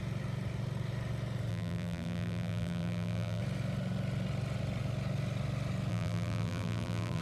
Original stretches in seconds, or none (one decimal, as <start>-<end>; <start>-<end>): 0.0-1.5; 3.4-5.9